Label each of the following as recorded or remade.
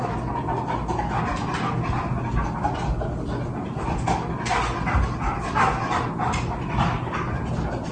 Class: recorded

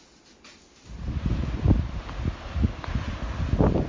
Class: recorded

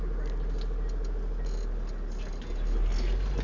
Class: recorded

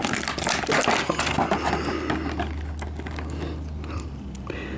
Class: recorded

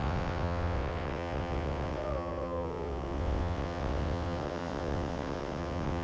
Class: remade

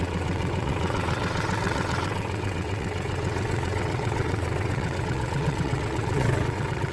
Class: remade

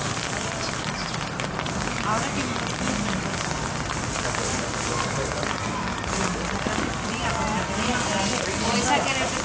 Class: recorded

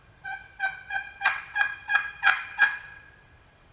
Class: remade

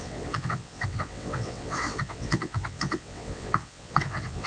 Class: remade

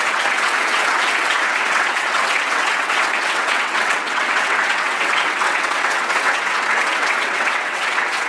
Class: remade